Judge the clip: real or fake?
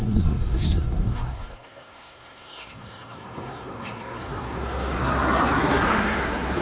fake